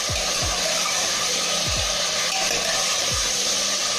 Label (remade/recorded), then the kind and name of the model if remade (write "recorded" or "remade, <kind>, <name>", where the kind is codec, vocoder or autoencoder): recorded